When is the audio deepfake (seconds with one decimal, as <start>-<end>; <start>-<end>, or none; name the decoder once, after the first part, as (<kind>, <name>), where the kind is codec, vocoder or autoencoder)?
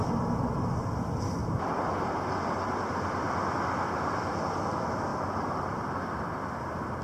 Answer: none